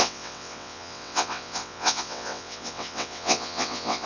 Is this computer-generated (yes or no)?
yes